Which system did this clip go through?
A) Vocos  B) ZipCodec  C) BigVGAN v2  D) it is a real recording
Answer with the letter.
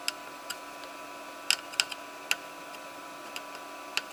D